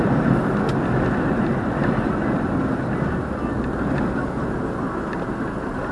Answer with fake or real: real